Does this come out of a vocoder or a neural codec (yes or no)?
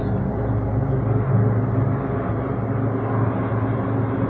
no